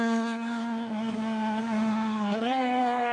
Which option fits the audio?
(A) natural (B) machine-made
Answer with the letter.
B